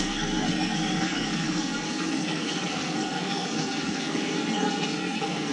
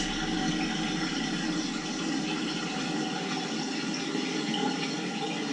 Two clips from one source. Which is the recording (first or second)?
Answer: second